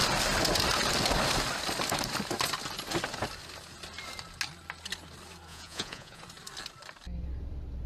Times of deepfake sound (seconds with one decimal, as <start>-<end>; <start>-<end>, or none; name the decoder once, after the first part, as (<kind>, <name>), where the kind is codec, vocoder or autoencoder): 5.5-6.2 (vocoder, Vocos)